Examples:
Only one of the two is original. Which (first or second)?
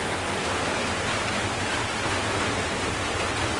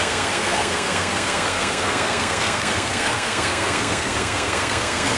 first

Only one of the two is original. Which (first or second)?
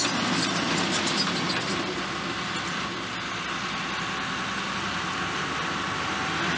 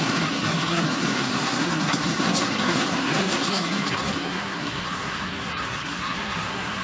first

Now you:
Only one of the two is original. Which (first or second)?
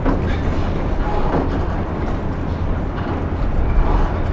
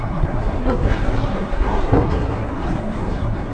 first